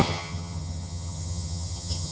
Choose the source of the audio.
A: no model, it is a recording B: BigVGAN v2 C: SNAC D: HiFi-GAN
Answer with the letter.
D